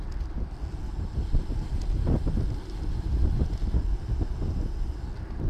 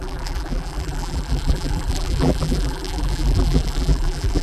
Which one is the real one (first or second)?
first